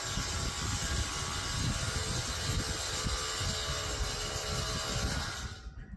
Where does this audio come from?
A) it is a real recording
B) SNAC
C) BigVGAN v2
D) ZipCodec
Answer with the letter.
A